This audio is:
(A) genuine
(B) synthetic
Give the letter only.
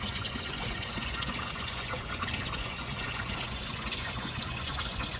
B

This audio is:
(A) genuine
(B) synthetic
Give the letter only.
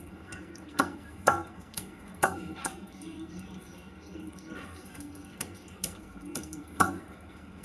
B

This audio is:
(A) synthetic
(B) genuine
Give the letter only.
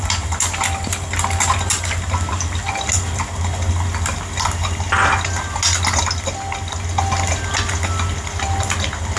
B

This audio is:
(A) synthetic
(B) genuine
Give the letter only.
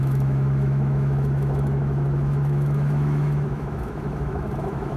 A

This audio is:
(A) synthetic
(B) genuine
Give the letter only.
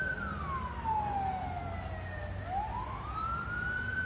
B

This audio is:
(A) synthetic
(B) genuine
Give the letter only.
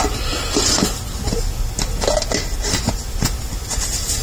B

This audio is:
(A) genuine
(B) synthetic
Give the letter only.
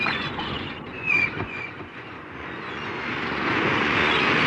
B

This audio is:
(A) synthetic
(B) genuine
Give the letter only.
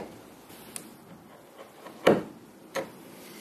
B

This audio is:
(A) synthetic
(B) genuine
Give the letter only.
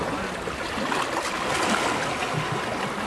B